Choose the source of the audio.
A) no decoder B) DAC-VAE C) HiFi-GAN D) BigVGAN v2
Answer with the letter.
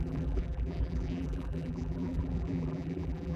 D